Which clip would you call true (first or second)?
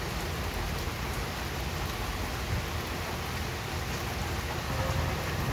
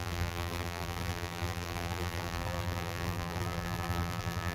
first